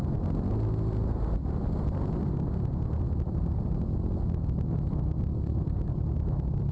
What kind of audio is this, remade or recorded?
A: recorded